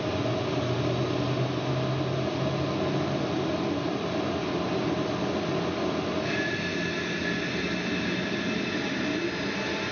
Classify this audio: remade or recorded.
recorded